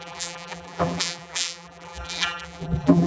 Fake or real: fake